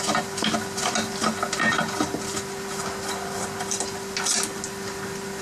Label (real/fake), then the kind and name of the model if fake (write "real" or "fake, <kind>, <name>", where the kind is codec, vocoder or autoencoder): real